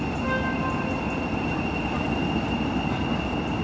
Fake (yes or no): no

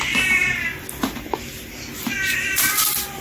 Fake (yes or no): no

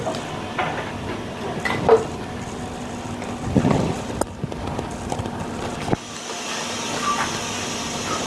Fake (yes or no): no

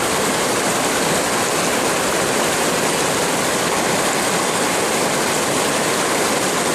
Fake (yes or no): no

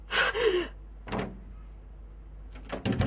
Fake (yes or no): no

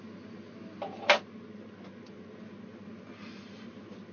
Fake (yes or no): no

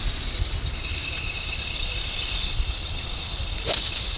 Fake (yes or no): no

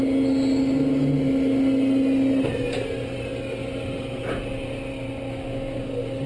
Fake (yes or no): no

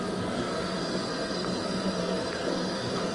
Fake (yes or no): yes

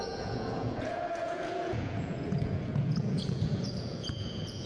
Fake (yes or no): yes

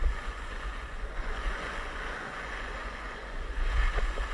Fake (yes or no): yes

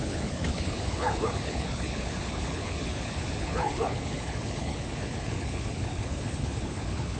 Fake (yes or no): yes